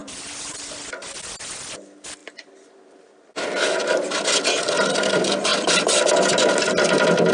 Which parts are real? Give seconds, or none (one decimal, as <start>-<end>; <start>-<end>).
0.5-5.5; 6.1-7.3